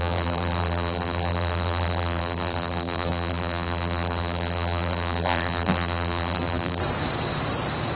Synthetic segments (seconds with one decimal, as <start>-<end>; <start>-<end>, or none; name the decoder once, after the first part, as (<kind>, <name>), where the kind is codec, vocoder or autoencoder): 0.0-6.8 (vocoder, BigVGAN v2)